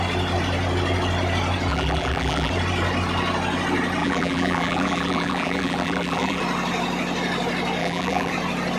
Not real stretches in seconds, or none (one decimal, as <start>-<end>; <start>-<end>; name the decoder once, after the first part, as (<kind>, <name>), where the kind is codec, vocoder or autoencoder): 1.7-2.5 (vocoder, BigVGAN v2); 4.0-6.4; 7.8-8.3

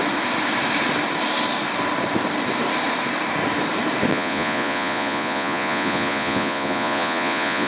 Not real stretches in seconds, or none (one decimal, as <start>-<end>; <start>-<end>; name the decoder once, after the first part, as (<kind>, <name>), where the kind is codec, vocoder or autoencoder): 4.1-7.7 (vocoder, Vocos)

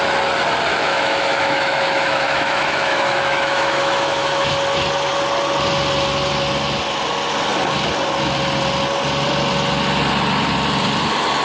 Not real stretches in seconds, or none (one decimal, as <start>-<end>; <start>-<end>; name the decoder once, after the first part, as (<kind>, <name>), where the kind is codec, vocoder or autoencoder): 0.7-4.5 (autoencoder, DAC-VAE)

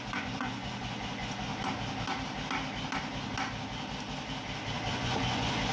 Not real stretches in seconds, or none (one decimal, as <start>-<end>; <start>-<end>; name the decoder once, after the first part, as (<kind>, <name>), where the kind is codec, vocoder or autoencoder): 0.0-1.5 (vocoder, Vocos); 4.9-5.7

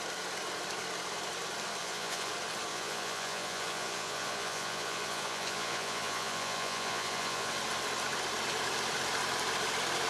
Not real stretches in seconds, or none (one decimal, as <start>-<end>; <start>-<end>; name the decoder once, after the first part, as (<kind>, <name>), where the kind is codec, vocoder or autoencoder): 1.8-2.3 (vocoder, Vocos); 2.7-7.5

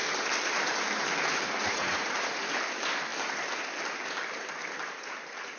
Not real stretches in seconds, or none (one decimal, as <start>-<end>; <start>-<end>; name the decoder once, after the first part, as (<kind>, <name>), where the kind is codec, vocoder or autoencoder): 1.6-2.4 (vocoder, Vocos)